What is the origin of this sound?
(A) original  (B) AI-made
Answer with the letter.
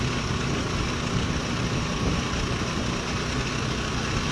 A